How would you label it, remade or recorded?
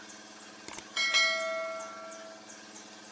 recorded